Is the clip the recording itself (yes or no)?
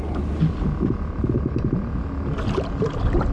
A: yes